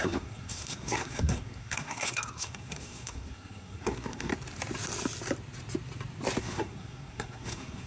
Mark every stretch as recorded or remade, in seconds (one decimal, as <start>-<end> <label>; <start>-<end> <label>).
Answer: 0.0-4.3 remade; 4.3-6.4 recorded; 6.4-7.9 remade